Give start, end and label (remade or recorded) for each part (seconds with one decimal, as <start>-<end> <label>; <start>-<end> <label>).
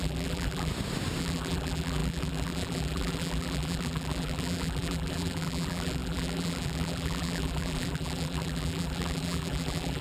0.0-0.7 remade; 0.7-1.2 recorded; 1.2-10.0 remade